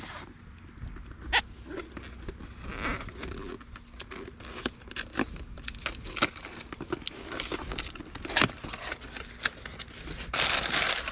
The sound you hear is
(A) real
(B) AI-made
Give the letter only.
A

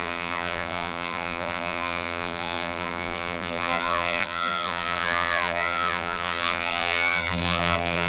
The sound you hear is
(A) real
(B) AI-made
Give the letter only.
B